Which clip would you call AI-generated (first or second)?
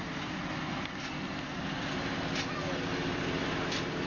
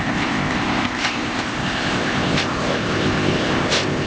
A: second